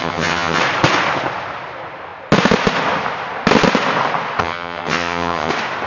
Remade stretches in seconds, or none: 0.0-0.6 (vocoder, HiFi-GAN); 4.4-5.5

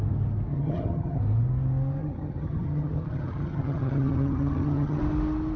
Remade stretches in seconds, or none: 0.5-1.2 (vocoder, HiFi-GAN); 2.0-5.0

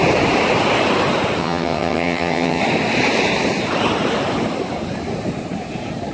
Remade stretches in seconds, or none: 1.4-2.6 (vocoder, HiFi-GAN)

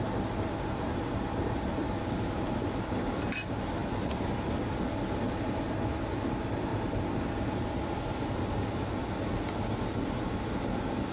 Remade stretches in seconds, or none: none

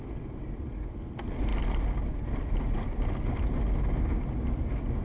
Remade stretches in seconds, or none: none

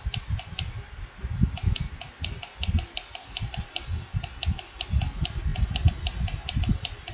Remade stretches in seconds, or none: none

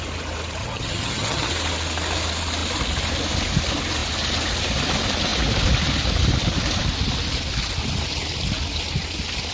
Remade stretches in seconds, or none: 0.6-1.5 (vocoder, HiFi-GAN)